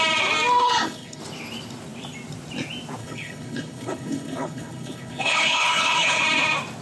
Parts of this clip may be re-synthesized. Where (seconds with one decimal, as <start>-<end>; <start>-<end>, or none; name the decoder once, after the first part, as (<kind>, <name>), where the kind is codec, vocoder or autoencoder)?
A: 0.6-1.2 (codec, HILCodec); 3.0-6.2

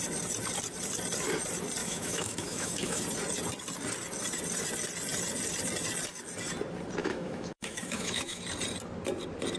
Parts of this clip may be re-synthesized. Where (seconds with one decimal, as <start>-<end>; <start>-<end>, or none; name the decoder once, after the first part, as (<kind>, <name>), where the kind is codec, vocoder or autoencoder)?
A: 1.8-3.0 (autoencoder, DAC-VAE); 7.0-8.4